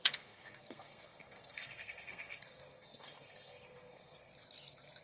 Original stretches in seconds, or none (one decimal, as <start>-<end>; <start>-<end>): 4.3-5.0